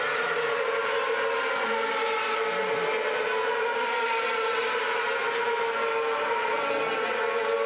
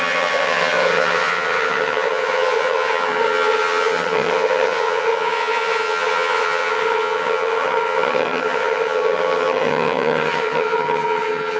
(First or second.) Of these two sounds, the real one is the first